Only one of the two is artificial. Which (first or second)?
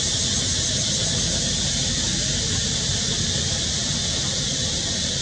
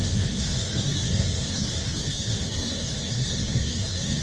second